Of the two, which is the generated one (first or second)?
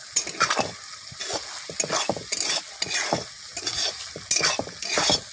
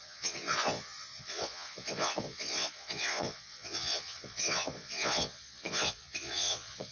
second